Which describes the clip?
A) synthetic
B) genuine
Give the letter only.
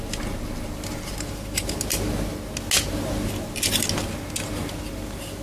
B